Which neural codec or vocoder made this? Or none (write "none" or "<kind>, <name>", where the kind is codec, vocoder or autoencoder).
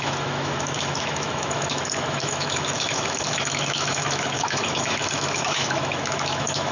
autoencoder, DAC-VAE